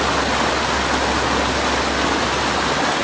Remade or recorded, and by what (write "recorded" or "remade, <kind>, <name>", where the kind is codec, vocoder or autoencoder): recorded